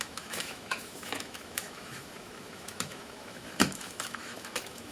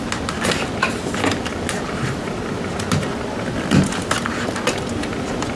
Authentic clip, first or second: second